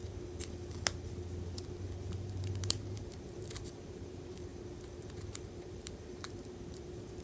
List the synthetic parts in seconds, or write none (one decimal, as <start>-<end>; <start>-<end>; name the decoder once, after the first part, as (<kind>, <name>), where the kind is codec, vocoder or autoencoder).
2.1-4.5 (vocoder, BigVGAN v2); 5.6-7.2